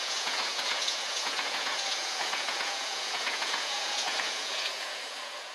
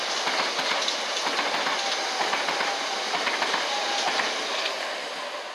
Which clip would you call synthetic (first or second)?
first